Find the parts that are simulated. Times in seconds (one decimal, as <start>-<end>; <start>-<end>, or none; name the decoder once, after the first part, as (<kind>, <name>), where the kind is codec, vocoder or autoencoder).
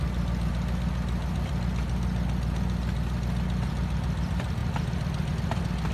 none